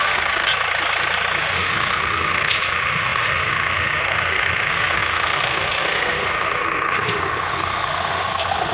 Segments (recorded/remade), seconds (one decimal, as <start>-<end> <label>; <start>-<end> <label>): 0.0-0.5 remade; 0.5-1.4 recorded; 1.4-8.7 remade